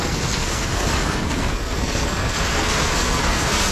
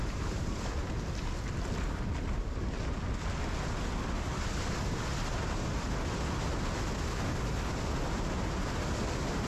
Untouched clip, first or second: second